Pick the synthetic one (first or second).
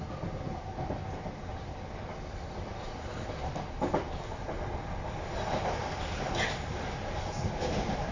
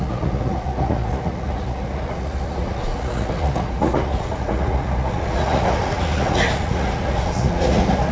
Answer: second